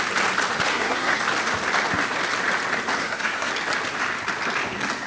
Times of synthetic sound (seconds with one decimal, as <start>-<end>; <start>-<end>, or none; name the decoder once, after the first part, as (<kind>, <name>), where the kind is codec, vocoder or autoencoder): 0.7-1.2 (codec, SNAC); 3.0-3.5